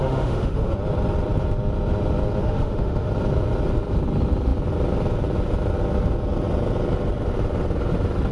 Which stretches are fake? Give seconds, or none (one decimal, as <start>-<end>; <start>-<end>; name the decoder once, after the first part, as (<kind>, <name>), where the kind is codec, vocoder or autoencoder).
0.0-0.7 (autoencoder, DAC-VAE); 2.4-3.1